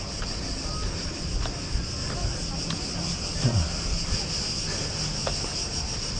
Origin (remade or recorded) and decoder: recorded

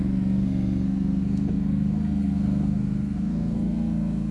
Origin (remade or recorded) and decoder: remade, codec, SNAC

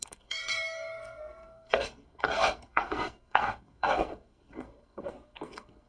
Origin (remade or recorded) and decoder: remade, codec, SNAC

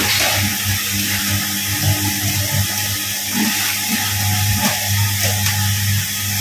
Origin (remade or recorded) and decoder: recorded